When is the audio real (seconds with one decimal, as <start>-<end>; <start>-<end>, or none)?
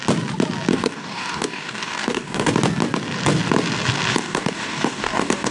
0.0-0.7; 2.5-4.1